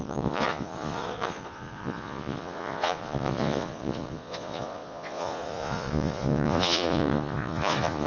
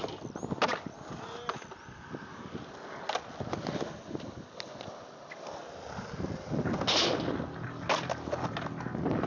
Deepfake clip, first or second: first